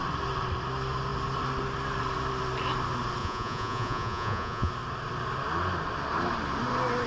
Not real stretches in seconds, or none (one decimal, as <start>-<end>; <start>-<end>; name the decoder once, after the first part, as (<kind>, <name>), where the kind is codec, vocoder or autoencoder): 3.2-4.7 (vocoder, Vocos)